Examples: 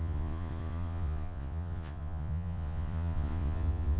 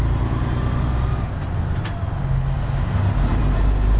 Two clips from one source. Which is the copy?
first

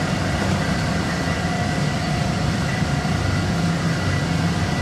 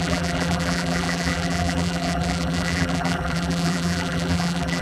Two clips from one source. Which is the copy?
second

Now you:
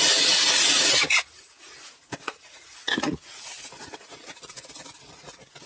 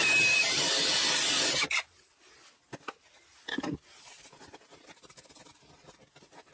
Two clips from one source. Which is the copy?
first